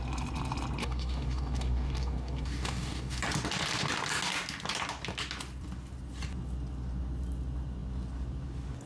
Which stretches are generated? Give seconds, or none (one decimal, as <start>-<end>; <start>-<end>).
0.8-3.2